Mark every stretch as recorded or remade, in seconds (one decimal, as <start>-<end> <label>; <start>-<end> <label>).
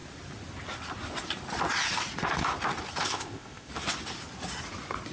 0.0-3.0 recorded; 3.0-3.7 remade; 3.7-5.1 recorded